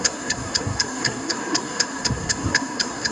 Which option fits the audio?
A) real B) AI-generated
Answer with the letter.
B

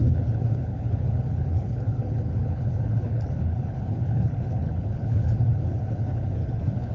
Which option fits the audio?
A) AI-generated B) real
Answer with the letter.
A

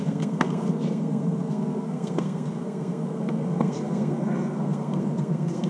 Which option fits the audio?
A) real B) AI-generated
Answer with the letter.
B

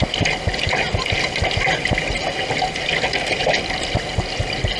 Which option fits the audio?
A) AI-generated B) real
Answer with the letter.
B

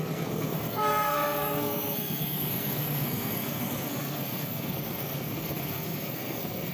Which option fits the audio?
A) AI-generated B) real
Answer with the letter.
A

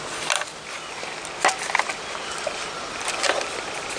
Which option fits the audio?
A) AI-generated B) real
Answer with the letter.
B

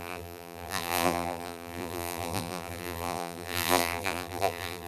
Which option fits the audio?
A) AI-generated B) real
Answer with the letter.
A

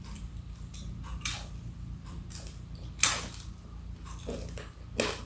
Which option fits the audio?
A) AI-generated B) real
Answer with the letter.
B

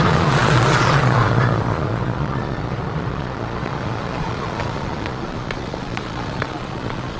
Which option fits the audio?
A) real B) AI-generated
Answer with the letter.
B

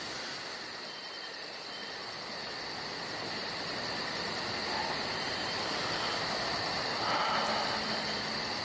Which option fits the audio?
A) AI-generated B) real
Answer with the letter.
B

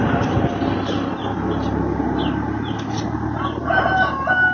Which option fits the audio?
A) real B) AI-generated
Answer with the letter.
A